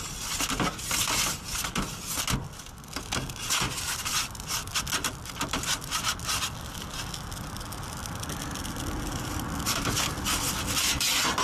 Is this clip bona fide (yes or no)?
yes